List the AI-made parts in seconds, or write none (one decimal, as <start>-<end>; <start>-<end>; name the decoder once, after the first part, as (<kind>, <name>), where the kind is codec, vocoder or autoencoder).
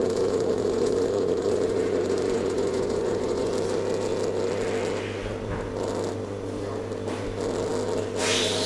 0.0-3.5 (vocoder, Vocos)